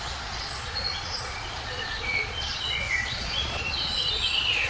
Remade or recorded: remade